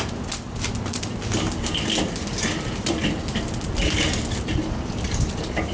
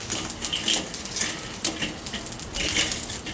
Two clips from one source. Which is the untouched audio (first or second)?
second